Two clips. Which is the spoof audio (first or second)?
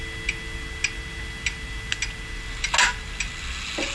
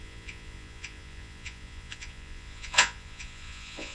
second